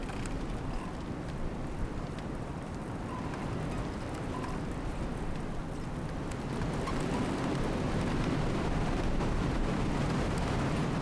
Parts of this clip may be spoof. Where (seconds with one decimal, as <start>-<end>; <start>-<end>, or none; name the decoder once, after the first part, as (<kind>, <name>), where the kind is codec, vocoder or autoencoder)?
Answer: 0.0-3.5 (vocoder, BigVGAN v2)

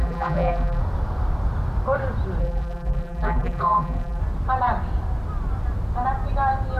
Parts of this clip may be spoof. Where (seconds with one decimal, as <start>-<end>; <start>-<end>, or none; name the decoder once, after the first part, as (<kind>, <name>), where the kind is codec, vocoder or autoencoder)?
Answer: 0.0-0.8 (vocoder, BigVGAN v2); 2.4-4.2

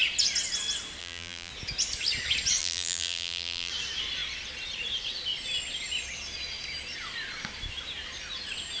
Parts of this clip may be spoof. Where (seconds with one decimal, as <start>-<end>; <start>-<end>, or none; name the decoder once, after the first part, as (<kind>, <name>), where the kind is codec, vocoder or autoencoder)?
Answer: 1.0-1.5 (vocoder, BigVGAN v2); 2.6-3.7